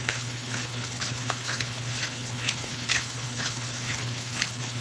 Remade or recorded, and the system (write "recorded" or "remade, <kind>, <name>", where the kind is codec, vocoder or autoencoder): remade, codec, HILCodec